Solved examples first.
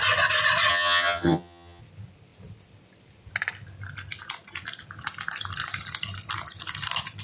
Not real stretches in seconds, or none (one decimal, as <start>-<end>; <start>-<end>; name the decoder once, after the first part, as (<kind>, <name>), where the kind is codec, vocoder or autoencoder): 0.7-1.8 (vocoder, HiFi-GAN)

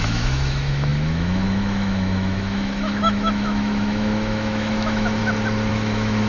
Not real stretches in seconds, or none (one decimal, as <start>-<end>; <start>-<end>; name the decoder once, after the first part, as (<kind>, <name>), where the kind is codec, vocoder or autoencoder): 0.0-5.2 (autoencoder, DAC-VAE); 5.7-6.3

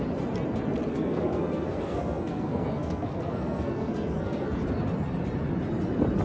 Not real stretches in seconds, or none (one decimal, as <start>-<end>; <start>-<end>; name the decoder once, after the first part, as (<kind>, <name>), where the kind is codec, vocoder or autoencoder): 0.9-4.6 (codec, SNAC)

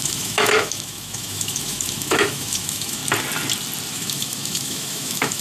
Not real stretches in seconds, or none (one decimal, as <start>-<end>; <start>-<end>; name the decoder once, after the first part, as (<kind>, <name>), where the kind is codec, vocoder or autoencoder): 0.0-3.0 (autoencoder, DAC-VAE); 3.9-5.4

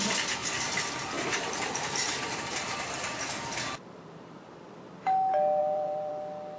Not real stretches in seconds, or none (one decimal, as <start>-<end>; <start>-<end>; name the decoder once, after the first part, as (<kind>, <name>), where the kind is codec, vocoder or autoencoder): 0.4-4.4 (vocoder, BigVGAN v2); 5.6-6.1

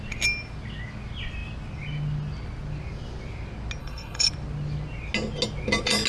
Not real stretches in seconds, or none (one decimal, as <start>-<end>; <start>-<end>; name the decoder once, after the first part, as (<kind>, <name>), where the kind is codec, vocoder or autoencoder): 3.8-4.3 (codec, HILCodec)